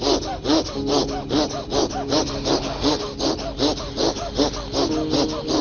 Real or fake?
real